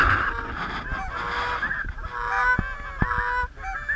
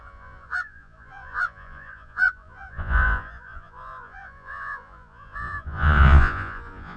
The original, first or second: first